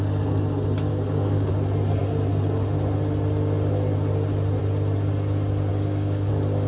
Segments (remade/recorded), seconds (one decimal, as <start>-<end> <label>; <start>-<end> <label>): 0.0-0.9 recorded; 0.9-1.5 remade; 1.5-5.7 recorded; 5.7-6.3 remade; 6.3-6.7 recorded